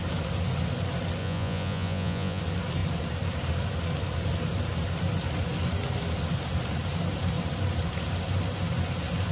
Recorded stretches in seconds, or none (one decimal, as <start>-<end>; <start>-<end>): 0.0-1.2; 2.4-9.3